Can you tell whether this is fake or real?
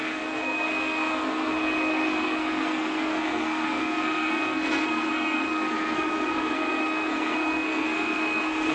fake